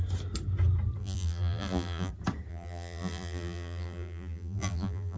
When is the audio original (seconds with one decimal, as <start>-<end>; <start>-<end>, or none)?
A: 0.0-1.0; 2.1-2.5